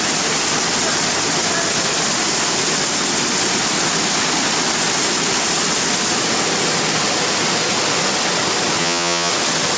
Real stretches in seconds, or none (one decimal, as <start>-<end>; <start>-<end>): 0.0-8.8; 9.3-9.8